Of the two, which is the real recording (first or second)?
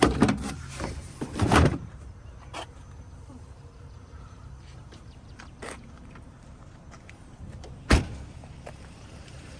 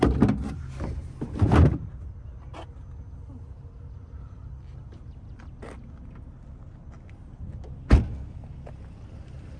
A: second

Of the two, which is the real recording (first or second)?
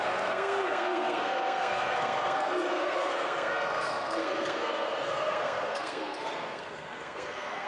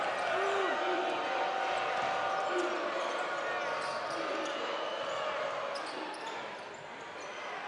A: second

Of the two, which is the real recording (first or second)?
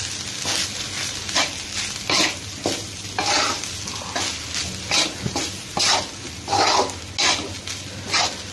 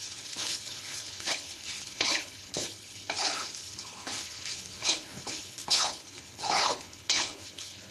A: first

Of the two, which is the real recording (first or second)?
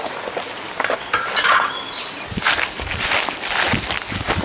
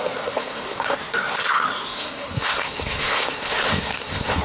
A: first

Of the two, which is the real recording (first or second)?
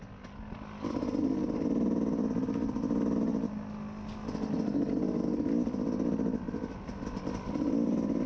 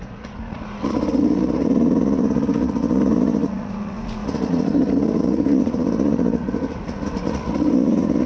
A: first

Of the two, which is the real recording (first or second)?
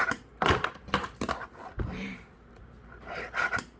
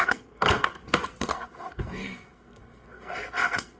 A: first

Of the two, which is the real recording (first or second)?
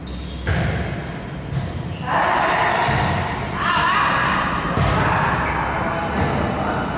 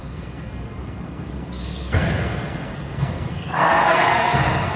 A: first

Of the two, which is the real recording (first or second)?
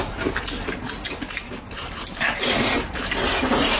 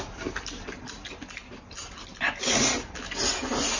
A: second